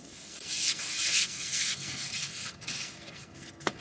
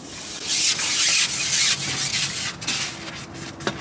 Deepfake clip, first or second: first